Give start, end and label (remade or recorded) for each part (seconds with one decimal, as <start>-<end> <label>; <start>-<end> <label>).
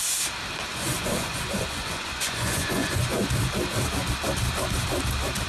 0.0-0.7 recorded; 0.7-3.2 remade; 3.2-5.5 recorded